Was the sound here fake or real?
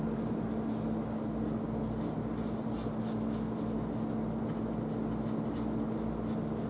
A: real